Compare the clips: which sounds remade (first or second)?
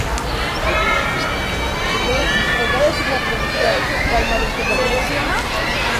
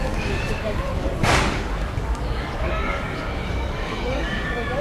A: second